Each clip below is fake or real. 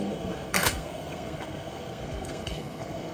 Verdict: fake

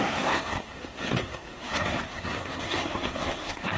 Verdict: fake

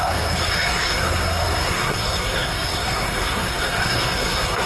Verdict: fake